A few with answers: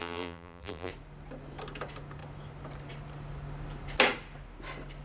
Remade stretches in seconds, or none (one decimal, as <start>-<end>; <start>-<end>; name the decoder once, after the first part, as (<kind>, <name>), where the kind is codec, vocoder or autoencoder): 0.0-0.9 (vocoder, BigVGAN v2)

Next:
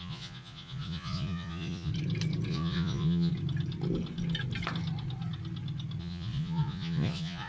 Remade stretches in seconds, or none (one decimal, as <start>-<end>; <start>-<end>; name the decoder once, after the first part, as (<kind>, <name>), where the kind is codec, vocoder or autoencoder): 0.0-1.9 (vocoder, Vocos); 2.5-3.3; 6.0-7.5

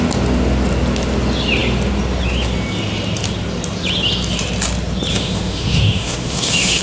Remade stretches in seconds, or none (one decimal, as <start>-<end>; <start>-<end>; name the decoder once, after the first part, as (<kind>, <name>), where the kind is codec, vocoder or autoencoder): 5.1-6.8 (autoencoder, DAC-VAE)

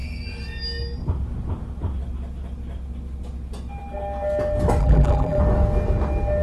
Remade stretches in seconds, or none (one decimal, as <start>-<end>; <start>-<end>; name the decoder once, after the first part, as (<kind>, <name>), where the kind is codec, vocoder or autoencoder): 4.8-5.4 (vocoder, BigVGAN v2)